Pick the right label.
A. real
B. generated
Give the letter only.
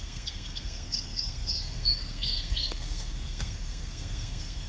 B